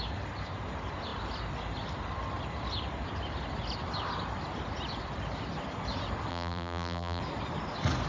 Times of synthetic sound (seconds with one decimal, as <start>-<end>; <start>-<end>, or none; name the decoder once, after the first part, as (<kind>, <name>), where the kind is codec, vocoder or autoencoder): 6.3-7.2 (vocoder, BigVGAN v2)

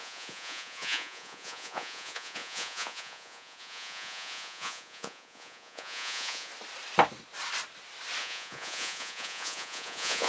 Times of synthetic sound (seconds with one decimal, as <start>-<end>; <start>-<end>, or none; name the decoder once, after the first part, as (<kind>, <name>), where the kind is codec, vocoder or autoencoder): 0.0-6.5 (vocoder, Vocos); 8.2-10.3

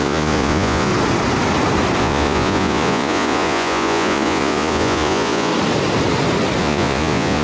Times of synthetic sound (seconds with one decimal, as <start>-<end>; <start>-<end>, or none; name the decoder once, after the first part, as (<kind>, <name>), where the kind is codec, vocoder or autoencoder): 0.0-0.9 (vocoder, Vocos); 2.0-5.5; 6.6-7.4

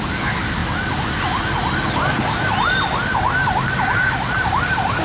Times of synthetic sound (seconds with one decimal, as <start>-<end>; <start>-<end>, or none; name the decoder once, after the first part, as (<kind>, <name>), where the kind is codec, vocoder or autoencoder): none

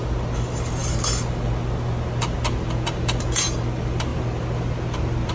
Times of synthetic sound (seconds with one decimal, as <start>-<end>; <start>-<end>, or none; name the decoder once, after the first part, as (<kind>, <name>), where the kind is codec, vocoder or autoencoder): none